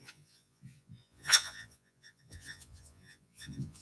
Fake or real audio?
fake